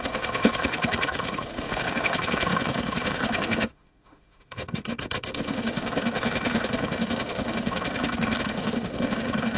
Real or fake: fake